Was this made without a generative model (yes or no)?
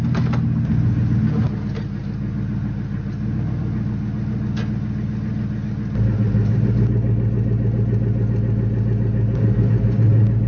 yes